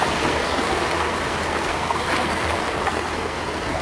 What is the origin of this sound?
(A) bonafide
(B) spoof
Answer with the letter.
B